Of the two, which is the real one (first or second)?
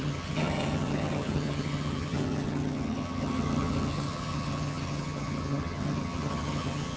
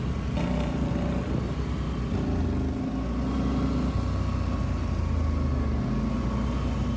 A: second